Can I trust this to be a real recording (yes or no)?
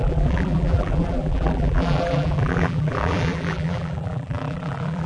no